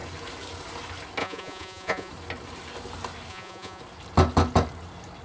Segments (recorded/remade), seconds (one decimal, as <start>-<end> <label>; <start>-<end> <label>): 0.0-1.2 recorded; 1.2-2.1 remade; 2.1-3.3 recorded; 3.3-3.8 remade; 3.8-5.2 recorded